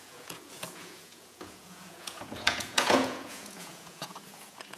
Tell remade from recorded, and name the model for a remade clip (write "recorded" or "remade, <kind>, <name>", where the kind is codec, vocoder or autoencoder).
remade, vocoder, Vocos